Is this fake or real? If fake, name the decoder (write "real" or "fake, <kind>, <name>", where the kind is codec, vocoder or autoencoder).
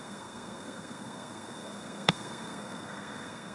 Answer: fake, codec, SNAC